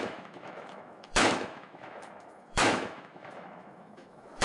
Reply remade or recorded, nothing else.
remade